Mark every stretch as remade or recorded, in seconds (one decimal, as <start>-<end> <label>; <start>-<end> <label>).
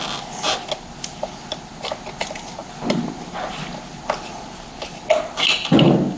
0.0-6.2 recorded